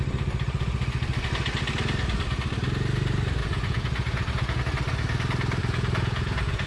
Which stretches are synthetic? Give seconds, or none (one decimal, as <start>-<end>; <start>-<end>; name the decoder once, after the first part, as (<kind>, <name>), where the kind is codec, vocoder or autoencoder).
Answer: 3.4-4.6 (vocoder, Vocos); 5.6-6.7